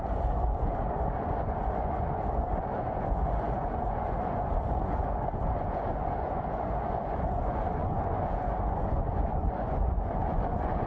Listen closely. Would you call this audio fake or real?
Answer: fake